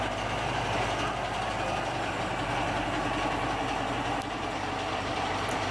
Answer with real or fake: real